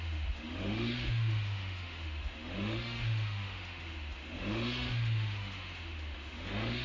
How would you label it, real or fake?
fake